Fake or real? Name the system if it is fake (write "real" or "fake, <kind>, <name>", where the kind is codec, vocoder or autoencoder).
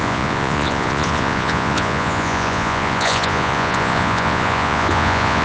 fake, vocoder, Vocos